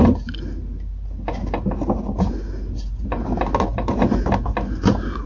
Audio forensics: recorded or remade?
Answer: recorded